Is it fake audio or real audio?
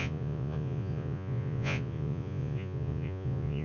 fake